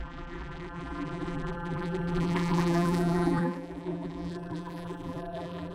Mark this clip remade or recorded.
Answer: remade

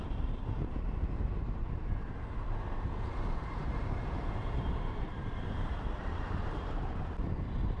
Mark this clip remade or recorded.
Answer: remade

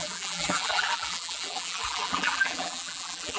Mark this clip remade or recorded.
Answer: remade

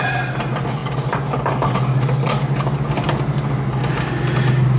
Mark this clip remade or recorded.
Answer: recorded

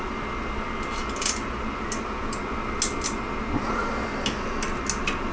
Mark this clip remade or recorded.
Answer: recorded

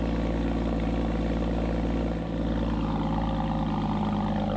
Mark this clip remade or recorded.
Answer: recorded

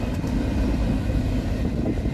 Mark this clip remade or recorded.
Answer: recorded